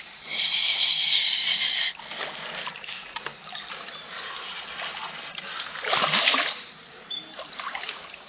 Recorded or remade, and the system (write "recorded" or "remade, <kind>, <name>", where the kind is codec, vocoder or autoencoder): remade, vocoder, BigVGAN v2